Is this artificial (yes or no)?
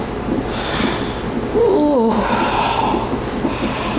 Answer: no